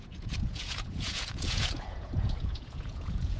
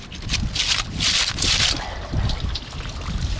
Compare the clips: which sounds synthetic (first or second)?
first